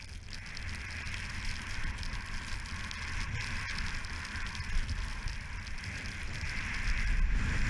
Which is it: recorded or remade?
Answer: recorded